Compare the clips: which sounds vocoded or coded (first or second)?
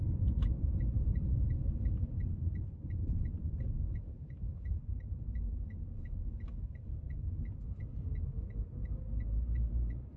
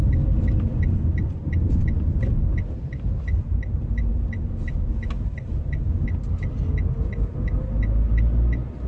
first